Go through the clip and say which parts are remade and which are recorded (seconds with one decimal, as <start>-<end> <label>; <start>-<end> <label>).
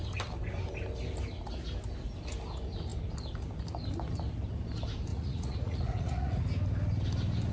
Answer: 0.0-5.1 recorded; 5.1-6.4 remade; 6.4-7.5 recorded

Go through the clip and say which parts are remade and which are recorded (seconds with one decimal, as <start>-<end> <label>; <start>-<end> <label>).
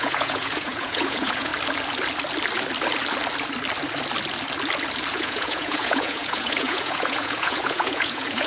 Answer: 0.0-1.5 remade; 1.5-5.1 recorded; 5.1-8.5 remade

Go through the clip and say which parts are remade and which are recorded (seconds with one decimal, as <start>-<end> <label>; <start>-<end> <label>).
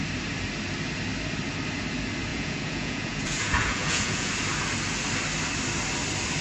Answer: 0.0-2.3 recorded; 2.3-4.3 remade; 4.3-6.4 recorded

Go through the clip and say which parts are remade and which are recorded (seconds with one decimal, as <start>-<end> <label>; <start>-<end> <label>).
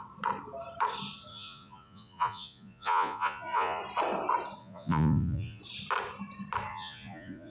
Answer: 0.0-1.3 recorded; 1.3-3.8 remade; 3.8-4.6 recorded; 4.6-5.6 remade; 5.6-6.7 recorded; 6.7-7.5 remade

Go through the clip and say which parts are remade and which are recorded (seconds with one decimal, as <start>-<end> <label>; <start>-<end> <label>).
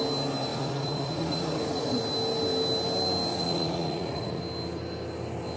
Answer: 0.0-0.5 recorded; 0.5-2.0 remade; 2.0-3.3 recorded; 3.3-4.4 remade; 4.4-5.6 recorded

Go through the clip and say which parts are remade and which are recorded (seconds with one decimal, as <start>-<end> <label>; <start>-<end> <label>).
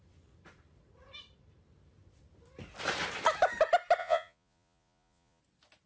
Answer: 0.0-4.0 recorded; 4.0-5.4 remade; 5.4-5.9 recorded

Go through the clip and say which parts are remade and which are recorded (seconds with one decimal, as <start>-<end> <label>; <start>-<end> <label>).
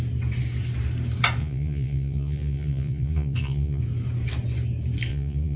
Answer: 0.0-1.4 recorded; 1.4-3.8 remade; 3.8-5.1 recorded; 5.1-5.6 remade